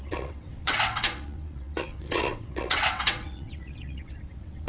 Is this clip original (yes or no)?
no